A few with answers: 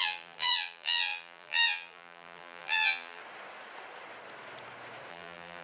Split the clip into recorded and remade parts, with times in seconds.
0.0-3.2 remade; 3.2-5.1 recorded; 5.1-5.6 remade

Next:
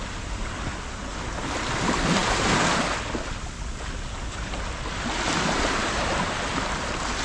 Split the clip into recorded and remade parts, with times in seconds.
0.0-7.2 recorded

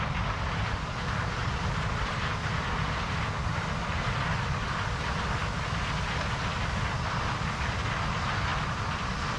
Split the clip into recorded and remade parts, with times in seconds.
0.0-9.4 recorded

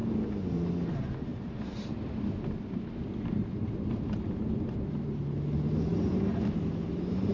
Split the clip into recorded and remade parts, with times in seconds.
0.0-7.3 recorded

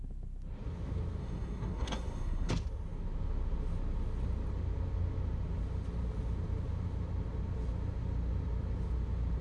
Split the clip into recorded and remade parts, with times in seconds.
0.0-1.2 recorded; 1.2-2.5 remade; 2.5-9.4 recorded

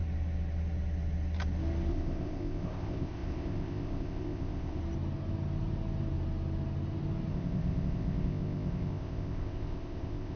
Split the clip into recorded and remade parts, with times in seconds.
0.0-1.9 recorded; 1.9-4.8 remade; 4.8-7.3 recorded; 7.3-10.4 remade

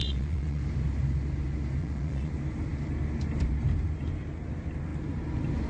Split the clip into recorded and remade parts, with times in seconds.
0.0-0.6 remade; 0.6-1.8 recorded; 1.8-2.3 remade; 2.3-5.7 recorded